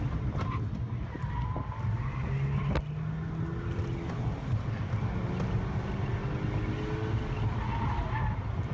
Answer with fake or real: real